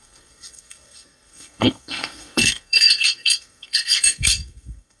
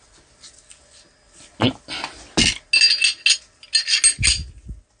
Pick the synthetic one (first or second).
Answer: first